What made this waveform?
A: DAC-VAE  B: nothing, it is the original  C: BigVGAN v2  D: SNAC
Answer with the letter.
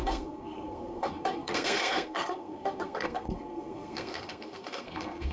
D